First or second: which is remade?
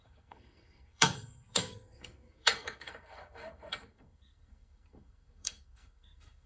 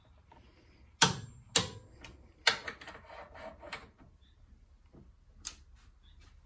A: first